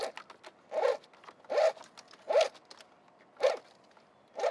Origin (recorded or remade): recorded